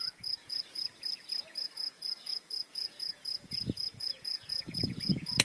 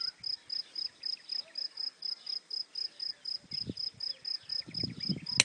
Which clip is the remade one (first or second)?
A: first